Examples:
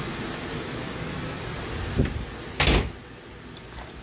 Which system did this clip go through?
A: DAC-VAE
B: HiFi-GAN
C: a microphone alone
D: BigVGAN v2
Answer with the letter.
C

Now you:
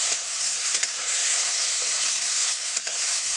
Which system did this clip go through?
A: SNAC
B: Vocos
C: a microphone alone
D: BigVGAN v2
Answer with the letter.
A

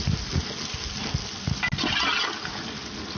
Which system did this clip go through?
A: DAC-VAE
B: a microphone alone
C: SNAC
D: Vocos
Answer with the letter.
B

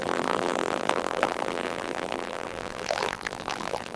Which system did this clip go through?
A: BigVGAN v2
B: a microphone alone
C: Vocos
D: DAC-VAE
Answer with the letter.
A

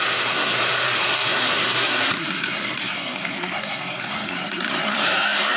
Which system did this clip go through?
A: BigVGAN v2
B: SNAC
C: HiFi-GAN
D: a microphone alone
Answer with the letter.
B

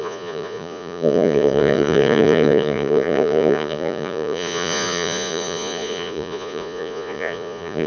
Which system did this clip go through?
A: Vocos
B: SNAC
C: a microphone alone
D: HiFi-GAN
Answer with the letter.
A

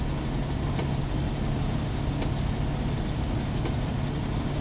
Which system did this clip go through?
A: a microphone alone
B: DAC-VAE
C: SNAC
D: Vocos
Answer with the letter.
A